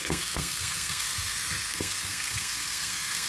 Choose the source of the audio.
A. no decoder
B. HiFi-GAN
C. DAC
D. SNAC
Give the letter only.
D